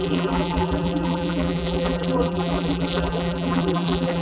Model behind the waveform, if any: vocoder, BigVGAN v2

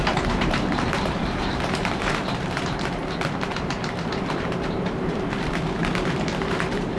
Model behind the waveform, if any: vocoder, BigVGAN v2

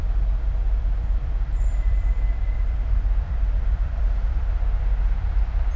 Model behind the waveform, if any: vocoder, BigVGAN v2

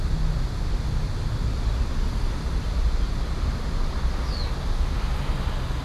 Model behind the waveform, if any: none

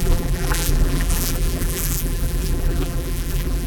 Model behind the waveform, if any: vocoder, BigVGAN v2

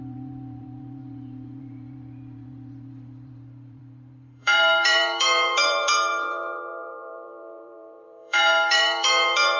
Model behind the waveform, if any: vocoder, BigVGAN v2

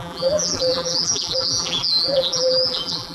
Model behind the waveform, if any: vocoder, BigVGAN v2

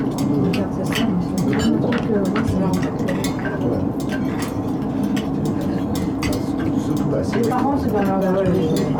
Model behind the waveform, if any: none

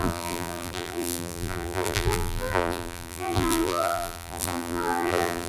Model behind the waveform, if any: vocoder, BigVGAN v2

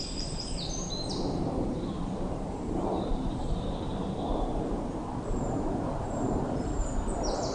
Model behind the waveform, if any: vocoder, BigVGAN v2